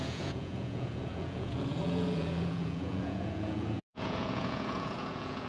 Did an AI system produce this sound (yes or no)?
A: yes